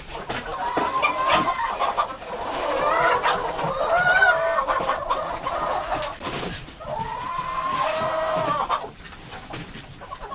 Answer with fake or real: real